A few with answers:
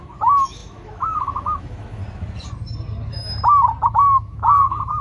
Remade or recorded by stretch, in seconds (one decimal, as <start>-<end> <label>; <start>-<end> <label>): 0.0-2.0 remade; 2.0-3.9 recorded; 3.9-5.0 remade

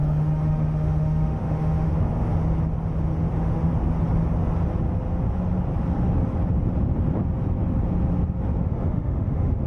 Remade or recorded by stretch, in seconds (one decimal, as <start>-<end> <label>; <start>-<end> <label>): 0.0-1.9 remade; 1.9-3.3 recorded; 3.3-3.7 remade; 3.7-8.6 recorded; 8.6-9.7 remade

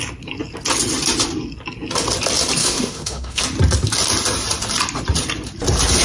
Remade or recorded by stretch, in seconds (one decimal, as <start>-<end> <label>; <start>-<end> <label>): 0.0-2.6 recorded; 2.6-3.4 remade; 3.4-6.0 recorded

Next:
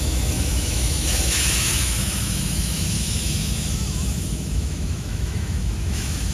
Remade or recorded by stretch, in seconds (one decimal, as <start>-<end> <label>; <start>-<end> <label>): 0.0-6.3 remade

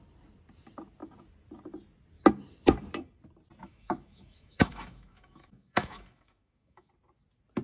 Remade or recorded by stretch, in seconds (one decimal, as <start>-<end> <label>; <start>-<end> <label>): 0.0-3.6 recorded; 3.6-6.9 remade; 6.9-7.6 recorded

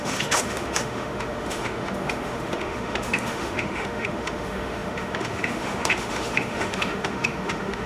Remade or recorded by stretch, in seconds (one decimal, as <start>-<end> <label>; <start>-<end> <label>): 0.0-7.9 remade

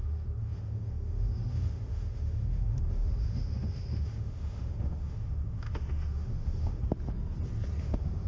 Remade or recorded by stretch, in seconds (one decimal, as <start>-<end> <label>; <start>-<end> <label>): 0.0-6.8 remade; 6.8-7.8 recorded; 7.8-8.3 remade